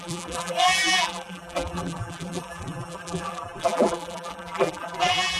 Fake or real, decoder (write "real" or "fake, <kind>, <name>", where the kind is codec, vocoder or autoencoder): fake, vocoder, BigVGAN v2